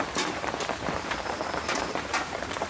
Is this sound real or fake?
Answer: fake